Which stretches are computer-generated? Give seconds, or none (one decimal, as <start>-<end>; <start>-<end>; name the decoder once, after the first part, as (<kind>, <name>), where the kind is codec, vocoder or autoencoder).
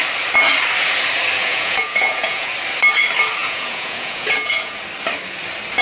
1.4-2.5 (vocoder, Vocos); 3.4-4.8